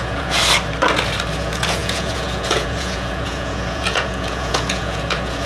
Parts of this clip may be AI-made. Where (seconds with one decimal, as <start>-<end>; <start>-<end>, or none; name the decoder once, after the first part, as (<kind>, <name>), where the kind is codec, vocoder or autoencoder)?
0.0-0.4 (vocoder, Vocos); 1.4-5.5